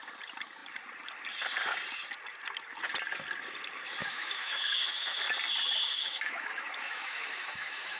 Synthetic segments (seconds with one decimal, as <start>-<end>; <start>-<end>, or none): 4.0-5.2; 5.8-8.0